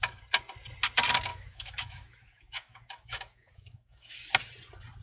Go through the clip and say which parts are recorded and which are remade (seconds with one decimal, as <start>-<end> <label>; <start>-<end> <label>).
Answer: 0.0-1.3 recorded; 1.3-4.3 remade; 4.3-5.0 recorded